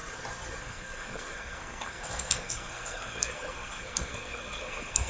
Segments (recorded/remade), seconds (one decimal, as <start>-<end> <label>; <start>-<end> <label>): 0.0-0.6 recorded; 0.6-5.1 remade